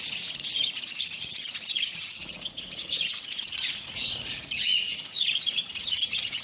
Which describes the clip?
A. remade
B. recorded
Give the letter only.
A